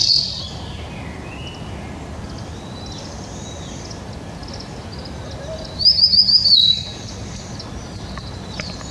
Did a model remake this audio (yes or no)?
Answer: no